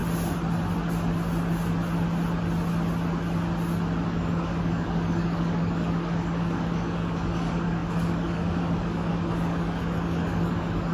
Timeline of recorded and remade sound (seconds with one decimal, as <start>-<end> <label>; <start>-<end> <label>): 0.0-4.1 recorded; 4.1-10.9 remade